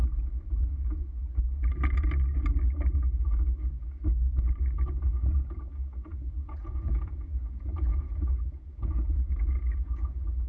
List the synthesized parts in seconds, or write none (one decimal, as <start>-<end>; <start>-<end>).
6.1-10.5

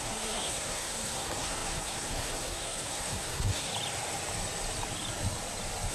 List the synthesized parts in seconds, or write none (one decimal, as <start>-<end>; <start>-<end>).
0.0-3.7

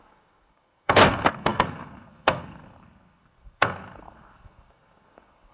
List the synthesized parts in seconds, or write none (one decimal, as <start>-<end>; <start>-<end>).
0.0-5.5

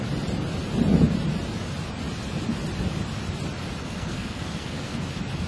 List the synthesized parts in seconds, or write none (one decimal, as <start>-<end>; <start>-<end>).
3.8-5.0

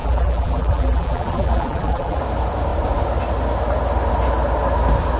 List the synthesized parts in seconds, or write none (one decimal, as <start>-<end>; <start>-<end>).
0.0-2.2